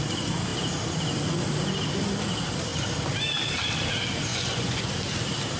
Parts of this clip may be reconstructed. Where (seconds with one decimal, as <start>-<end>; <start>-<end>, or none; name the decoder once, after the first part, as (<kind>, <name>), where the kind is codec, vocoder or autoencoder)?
4.3-4.9 (vocoder, Vocos)